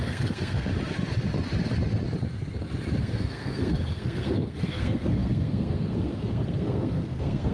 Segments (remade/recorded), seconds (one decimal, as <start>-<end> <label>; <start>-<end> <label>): 0.0-0.7 remade; 0.7-3.0 recorded; 3.0-7.5 remade